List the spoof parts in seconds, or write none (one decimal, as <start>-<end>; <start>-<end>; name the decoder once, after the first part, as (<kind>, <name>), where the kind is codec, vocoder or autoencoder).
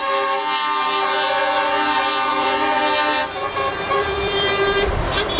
2.3-2.8 (vocoder, BigVGAN v2); 3.2-5.4